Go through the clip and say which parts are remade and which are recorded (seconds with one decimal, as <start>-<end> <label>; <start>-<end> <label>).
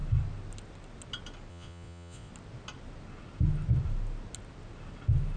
0.0-1.5 recorded; 1.5-2.3 remade; 2.3-5.4 recorded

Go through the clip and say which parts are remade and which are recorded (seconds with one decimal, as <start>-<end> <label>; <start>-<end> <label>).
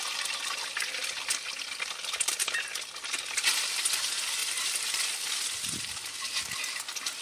0.0-7.2 recorded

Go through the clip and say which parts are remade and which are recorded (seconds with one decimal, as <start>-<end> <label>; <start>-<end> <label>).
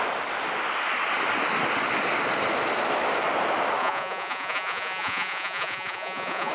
0.0-3.8 recorded; 3.8-6.5 remade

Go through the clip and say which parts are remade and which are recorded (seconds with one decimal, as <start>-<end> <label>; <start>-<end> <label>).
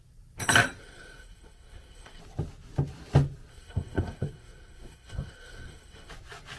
0.0-0.8 recorded; 0.8-2.2 remade; 2.2-3.5 recorded; 3.5-6.1 remade; 6.1-6.6 recorded